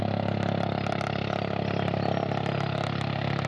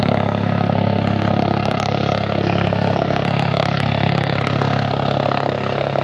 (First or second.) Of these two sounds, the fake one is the second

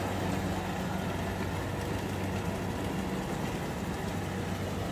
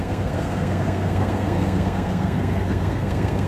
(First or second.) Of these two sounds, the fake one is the second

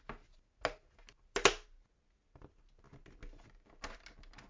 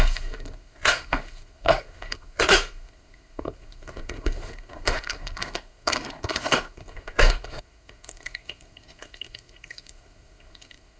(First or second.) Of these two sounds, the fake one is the second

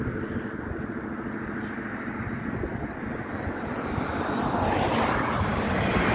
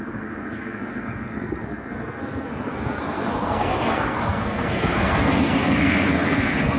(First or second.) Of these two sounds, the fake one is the second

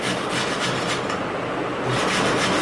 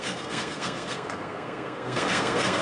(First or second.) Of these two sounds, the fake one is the second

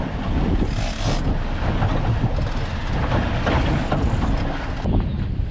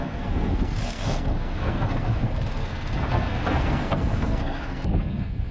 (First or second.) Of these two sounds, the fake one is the second